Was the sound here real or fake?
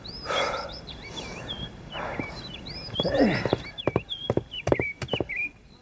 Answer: real